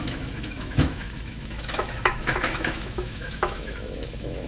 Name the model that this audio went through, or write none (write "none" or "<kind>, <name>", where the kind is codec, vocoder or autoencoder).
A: autoencoder, DAC-VAE